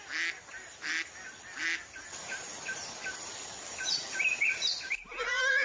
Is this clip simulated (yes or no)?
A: no